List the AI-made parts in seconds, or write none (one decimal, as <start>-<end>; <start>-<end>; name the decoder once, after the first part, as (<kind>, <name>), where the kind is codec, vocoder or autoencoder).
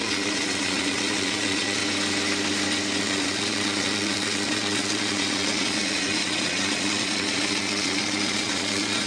0.0-1.8 (vocoder, Vocos); 3.0-9.1